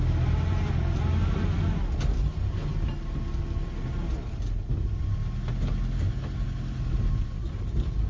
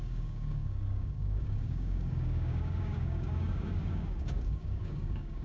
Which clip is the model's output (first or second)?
second